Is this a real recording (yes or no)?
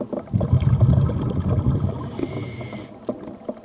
yes